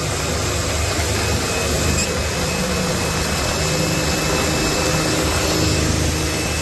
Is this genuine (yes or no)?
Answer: yes